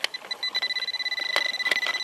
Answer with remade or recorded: recorded